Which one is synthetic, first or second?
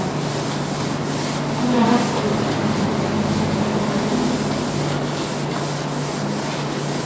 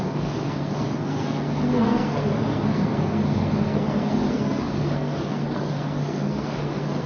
second